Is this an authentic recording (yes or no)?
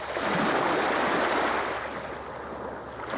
yes